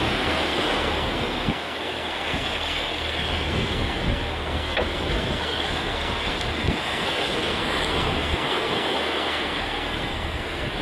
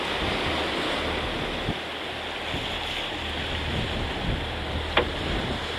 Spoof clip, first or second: first